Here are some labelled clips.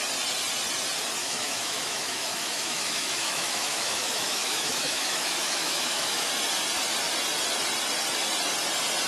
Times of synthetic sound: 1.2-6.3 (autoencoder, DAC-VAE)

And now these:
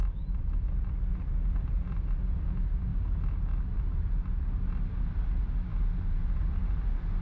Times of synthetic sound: none